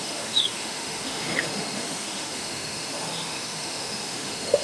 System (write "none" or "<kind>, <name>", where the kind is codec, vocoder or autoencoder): autoencoder, DAC-VAE